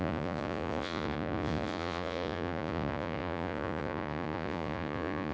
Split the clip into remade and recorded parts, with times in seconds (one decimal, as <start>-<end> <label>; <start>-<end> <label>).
0.0-5.3 remade